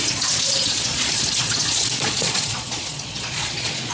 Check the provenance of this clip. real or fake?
fake